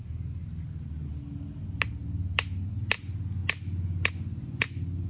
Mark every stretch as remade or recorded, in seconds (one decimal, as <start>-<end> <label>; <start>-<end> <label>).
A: 0.0-5.1 recorded